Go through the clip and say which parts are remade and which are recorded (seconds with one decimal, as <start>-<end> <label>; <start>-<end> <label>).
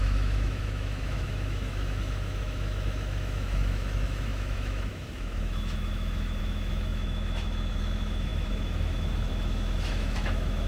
0.0-10.7 remade